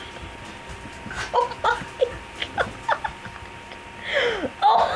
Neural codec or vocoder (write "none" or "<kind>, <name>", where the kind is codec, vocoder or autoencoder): none